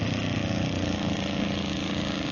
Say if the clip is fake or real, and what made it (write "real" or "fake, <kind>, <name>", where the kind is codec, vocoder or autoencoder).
real